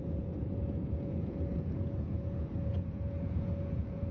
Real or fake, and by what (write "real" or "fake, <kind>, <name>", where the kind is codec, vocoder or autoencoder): fake, vocoder, Vocos